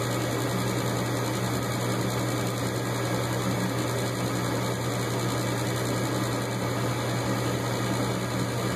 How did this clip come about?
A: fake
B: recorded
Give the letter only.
B